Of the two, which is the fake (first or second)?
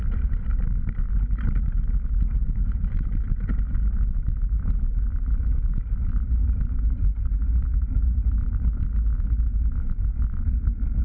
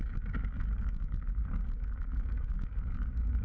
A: second